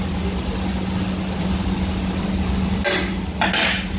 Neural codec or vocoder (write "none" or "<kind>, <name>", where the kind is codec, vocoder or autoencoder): none